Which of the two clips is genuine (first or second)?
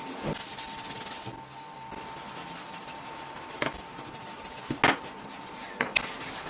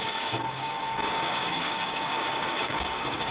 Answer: first